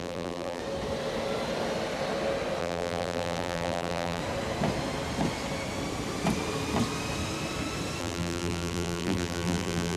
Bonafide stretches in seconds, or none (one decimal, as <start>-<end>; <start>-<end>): 0.6-2.6; 4.2-8.0